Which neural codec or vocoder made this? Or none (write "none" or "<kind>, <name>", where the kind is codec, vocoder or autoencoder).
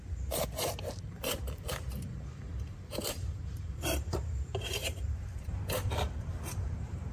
vocoder, BigVGAN v2